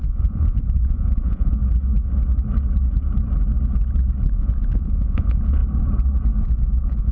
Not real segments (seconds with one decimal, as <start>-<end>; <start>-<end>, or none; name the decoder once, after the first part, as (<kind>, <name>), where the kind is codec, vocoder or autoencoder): 0.0-1.6 (vocoder, Vocos); 4.3-5.6; 6.4-7.1